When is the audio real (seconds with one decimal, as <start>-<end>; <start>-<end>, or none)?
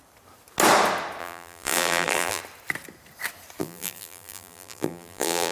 0.0-1.2; 2.4-3.6